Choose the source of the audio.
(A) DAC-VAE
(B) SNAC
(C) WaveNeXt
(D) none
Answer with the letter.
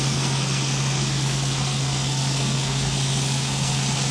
B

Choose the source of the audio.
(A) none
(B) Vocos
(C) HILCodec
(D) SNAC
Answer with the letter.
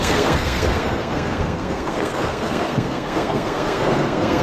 D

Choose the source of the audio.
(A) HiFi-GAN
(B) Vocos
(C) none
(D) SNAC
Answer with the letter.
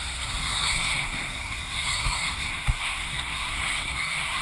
D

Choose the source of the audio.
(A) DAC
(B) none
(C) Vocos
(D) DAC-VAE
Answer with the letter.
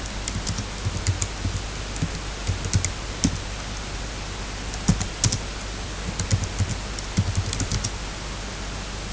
B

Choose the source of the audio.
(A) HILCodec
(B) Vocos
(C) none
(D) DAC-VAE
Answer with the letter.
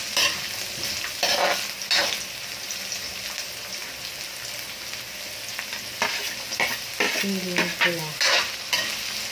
C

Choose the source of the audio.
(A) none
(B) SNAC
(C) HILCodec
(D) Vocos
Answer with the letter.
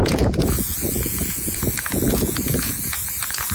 D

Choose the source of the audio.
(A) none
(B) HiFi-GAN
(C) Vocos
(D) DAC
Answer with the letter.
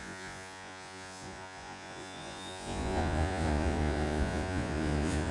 C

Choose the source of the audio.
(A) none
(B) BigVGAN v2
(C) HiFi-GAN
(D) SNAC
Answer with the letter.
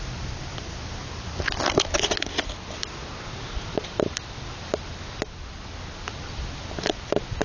A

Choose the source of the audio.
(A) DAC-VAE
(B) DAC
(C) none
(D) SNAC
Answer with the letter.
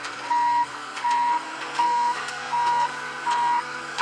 D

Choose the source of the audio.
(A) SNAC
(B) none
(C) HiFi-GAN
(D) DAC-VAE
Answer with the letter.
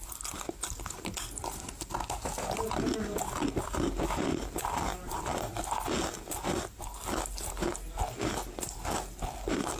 B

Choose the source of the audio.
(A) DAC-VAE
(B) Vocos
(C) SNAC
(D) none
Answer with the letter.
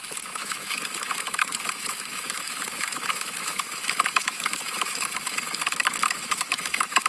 A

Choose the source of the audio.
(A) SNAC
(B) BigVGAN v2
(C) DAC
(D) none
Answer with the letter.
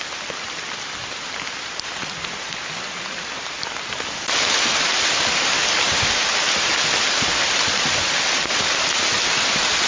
B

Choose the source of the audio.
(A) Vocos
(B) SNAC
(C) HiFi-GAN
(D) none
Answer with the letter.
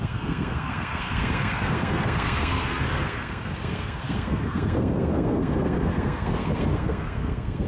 B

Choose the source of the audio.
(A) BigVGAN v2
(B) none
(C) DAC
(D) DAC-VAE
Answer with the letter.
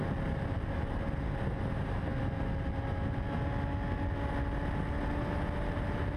B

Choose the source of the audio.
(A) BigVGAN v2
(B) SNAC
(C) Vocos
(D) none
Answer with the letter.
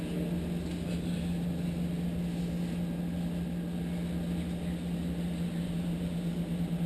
D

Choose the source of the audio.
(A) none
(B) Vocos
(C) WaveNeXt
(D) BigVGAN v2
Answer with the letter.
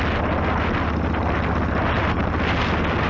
A